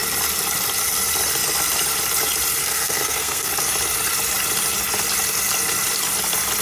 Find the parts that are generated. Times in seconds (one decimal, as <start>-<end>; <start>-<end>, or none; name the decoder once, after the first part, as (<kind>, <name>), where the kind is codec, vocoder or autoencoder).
2.6-3.5 (codec, SNAC)